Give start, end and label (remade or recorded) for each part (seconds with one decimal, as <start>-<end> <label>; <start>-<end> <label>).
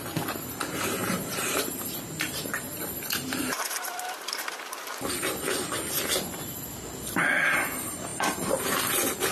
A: 0.0-1.0 recorded; 1.0-1.8 remade; 1.8-8.1 recorded; 8.1-8.8 remade; 8.8-9.3 recorded